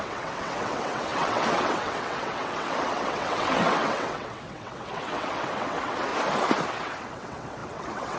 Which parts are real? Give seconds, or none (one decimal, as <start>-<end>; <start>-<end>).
6.1-6.7